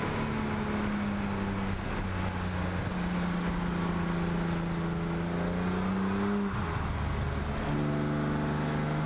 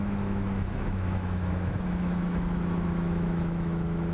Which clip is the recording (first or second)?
first